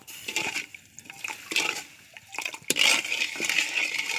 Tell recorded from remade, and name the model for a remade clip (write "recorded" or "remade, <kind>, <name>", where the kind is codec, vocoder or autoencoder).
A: recorded